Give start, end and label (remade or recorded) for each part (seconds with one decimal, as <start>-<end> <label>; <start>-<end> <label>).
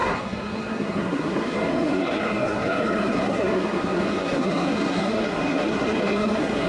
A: 0.0-6.7 remade